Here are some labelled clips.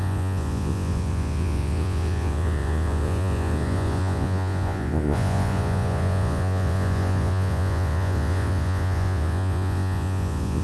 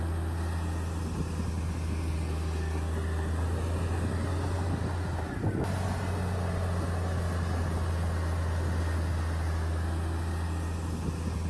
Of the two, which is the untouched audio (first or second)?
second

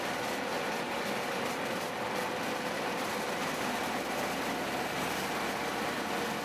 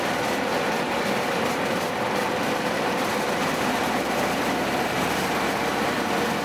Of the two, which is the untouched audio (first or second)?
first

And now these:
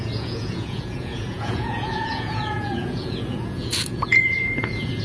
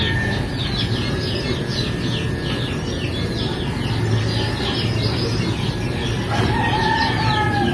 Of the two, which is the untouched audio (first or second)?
second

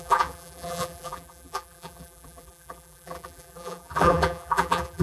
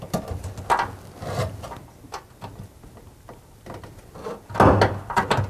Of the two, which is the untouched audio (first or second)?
second